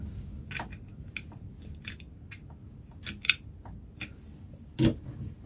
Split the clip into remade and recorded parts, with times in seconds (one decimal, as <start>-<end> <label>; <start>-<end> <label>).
0.0-5.5 recorded